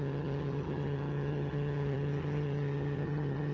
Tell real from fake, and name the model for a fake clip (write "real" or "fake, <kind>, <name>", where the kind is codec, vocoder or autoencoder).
fake, vocoder, HiFi-GAN